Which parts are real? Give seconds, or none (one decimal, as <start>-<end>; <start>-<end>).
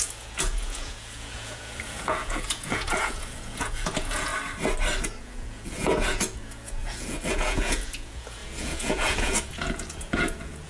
4.3-5.2